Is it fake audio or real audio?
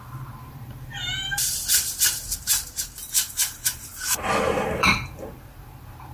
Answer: fake